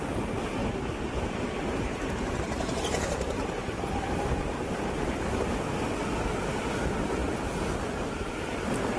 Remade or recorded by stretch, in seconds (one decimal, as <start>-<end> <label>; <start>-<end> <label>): 0.0-0.6 recorded; 0.6-4.7 remade; 4.7-9.0 recorded